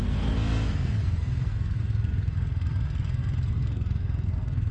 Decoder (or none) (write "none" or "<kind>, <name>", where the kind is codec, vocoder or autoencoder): codec, SNAC